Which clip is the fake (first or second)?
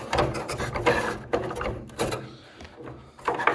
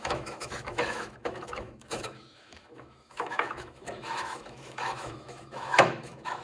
second